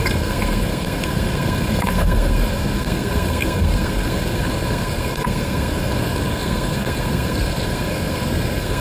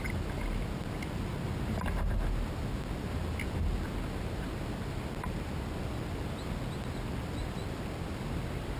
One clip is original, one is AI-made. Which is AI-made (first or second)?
first